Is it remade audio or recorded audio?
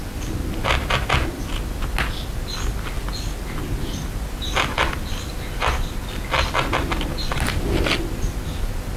recorded